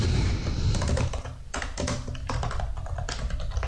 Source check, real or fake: real